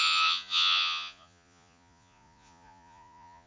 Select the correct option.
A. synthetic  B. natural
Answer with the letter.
A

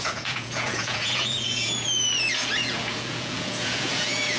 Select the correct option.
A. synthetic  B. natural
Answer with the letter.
A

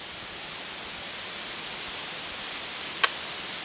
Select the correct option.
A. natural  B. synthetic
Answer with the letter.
A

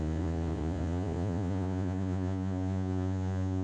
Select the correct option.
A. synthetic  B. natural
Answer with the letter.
A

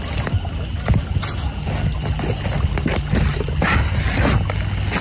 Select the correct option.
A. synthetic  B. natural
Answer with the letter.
B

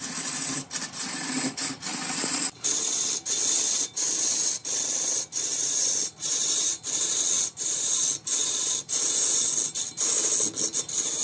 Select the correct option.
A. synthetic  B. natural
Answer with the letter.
B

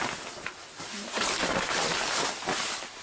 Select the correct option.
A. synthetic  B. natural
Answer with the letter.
B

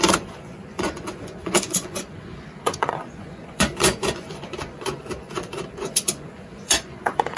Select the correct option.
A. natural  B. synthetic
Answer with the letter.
B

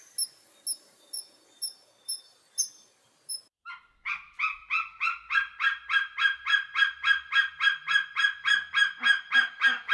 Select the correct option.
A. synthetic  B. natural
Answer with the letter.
B